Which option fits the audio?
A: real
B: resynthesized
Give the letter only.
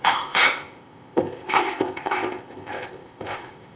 B